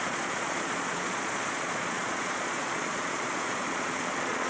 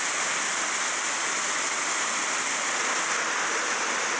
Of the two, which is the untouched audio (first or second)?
second